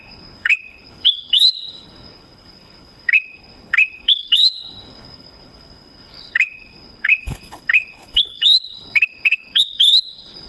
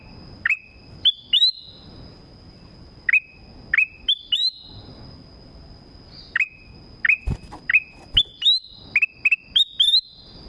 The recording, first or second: second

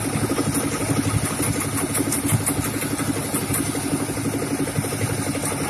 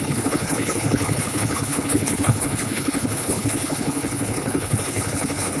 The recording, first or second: first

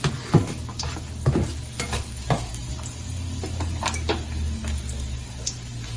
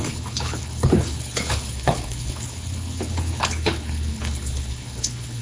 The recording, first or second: first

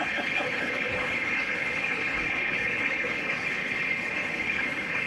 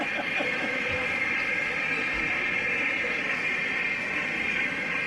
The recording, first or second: second